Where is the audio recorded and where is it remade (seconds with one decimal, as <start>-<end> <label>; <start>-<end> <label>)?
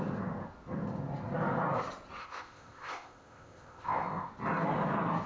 0.0-2.2 recorded; 2.2-4.3 remade; 4.3-5.3 recorded